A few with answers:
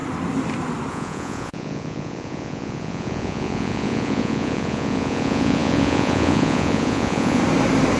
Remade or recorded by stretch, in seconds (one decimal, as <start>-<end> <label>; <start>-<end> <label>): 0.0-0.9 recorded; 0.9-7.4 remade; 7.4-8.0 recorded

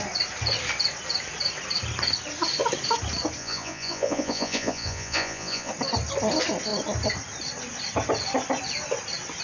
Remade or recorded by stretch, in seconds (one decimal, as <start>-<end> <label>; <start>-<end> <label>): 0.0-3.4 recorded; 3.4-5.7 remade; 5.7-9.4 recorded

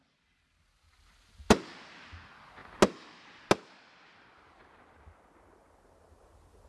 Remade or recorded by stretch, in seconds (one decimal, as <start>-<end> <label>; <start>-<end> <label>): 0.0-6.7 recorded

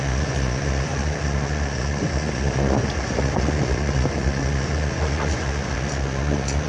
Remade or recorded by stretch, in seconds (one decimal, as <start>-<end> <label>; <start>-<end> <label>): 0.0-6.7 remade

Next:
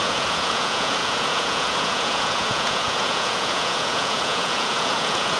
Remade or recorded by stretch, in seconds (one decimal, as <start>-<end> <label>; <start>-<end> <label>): 0.0-5.4 remade